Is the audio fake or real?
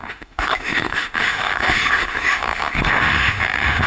fake